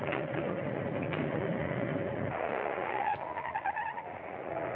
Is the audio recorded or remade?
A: remade